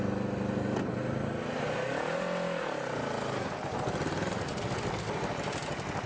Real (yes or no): yes